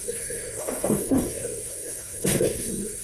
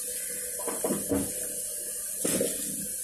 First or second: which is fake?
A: first